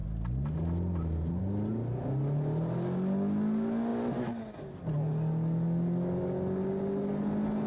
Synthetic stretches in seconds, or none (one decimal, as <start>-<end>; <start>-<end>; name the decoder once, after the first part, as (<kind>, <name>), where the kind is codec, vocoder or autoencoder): none